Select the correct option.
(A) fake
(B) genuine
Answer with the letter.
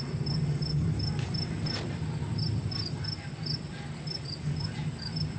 B